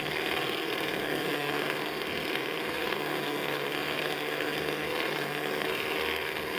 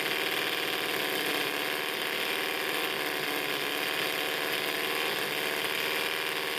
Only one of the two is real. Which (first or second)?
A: second